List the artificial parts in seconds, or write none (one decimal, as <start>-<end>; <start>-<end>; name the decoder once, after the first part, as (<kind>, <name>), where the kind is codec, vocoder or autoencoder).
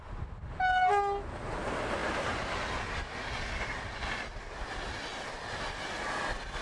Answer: none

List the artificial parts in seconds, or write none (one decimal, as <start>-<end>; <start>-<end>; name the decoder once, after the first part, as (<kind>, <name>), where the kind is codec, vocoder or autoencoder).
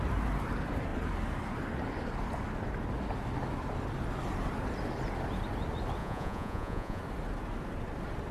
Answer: 6.0-7.0 (vocoder, Vocos)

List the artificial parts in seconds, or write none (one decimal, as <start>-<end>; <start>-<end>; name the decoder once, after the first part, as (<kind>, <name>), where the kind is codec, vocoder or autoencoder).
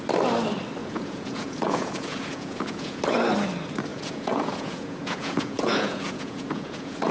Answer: 0.8-3.0 (vocoder, Vocos); 3.9-7.1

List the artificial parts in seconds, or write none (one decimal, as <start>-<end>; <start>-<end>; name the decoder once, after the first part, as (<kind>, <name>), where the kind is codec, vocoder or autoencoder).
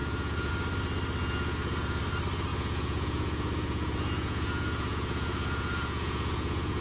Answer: 0.0-0.5 (vocoder, Vocos); 1.2-2.0; 2.5-6.8